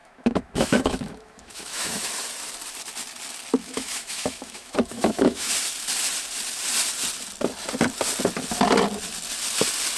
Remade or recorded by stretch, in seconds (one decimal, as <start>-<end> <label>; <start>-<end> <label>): 0.0-2.1 remade; 2.1-3.6 recorded; 3.6-5.5 remade; 5.5-10.0 recorded